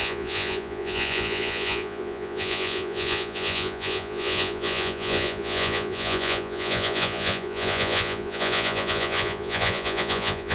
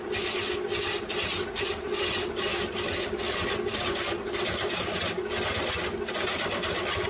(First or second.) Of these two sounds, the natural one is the second